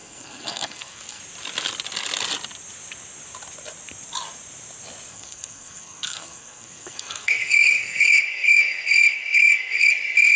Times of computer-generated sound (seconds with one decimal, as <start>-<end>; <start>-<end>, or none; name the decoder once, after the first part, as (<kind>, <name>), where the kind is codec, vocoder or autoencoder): 0.0-1.2 (codec, SNAC); 5.1-9.9